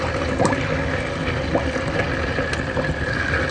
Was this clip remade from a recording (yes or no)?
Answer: no